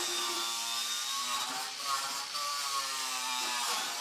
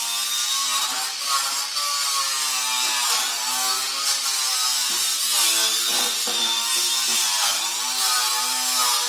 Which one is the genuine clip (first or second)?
second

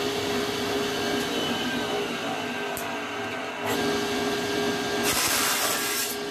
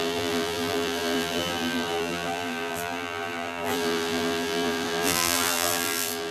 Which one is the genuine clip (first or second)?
first